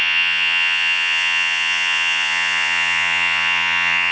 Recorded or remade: remade